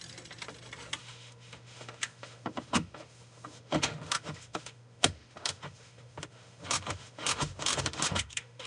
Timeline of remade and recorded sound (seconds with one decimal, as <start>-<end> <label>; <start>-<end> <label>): 0.0-1.0 recorded; 1.0-8.7 remade

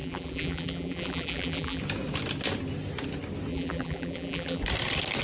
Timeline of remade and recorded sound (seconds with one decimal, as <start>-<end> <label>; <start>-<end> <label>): 0.0-1.8 remade; 1.8-3.5 recorded; 3.5-4.6 remade; 4.6-5.2 recorded

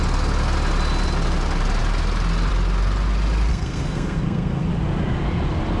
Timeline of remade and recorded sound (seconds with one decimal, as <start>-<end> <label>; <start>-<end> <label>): 0.0-3.5 recorded; 3.5-4.7 remade; 4.7-5.8 recorded

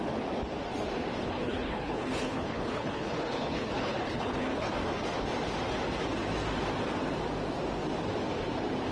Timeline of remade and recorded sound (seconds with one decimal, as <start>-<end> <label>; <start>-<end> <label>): 0.0-1.2 recorded; 1.2-4.7 remade; 4.7-8.9 recorded

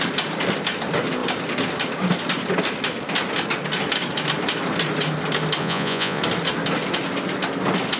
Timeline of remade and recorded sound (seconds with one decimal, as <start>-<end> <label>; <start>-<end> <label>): 0.0-5.6 recorded; 5.6-6.2 remade; 6.2-8.0 recorded

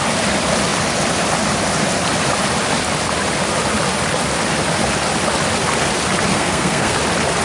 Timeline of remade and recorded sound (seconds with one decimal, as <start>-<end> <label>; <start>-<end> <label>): 0.0-6.3 recorded; 6.3-7.0 remade; 7.0-7.4 recorded